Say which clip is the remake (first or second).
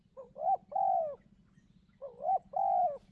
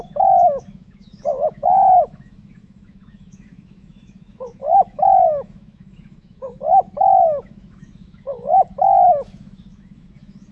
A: second